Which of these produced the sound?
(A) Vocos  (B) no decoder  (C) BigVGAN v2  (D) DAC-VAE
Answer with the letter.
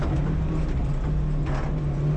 B